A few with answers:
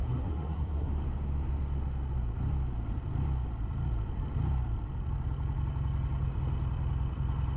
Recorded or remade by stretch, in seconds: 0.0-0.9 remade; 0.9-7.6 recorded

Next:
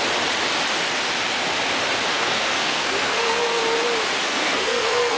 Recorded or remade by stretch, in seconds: 0.0-2.1 recorded; 2.1-3.6 remade; 3.6-4.3 recorded; 4.3-5.2 remade

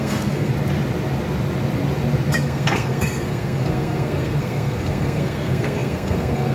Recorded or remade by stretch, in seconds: 0.0-0.5 remade; 0.5-2.3 recorded; 2.3-6.5 remade